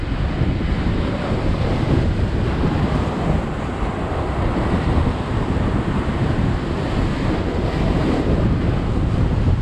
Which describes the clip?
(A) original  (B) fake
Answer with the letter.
A